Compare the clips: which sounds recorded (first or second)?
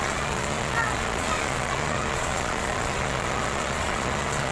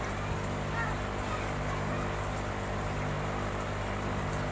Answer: second